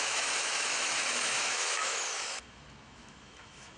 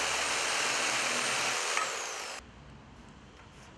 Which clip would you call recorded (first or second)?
second